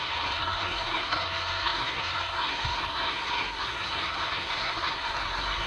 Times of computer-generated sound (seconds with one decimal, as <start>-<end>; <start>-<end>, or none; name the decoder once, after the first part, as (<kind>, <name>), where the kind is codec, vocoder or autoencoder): 0.0-5.7 (codec, SNAC)